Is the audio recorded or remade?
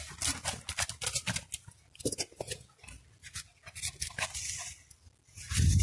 recorded